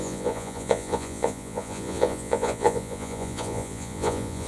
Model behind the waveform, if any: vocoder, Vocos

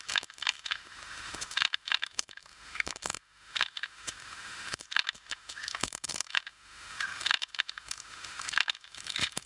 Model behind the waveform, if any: autoencoder, DAC-VAE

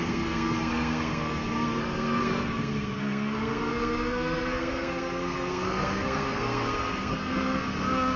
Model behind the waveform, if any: codec, SNAC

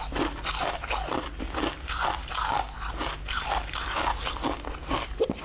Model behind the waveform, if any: vocoder, BigVGAN v2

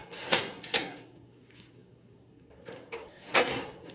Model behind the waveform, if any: codec, SNAC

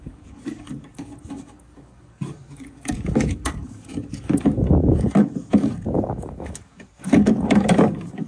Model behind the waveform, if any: codec, DAC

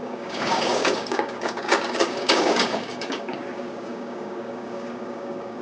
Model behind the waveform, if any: codec, DAC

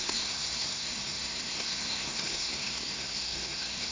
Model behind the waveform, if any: codec, SNAC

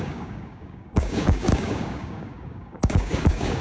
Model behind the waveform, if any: codec, DAC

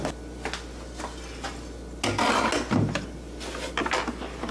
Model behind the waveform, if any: none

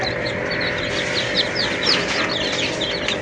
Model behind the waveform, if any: none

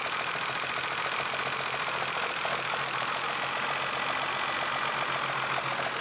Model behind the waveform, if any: none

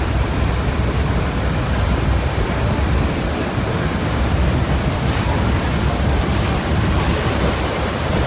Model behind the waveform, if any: vocoder, BigVGAN v2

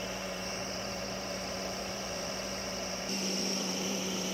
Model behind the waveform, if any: vocoder, BigVGAN v2